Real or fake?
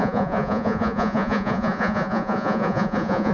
fake